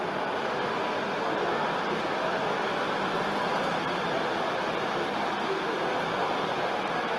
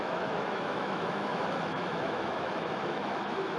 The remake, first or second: second